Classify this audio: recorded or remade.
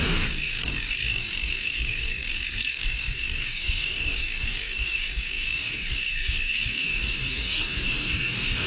remade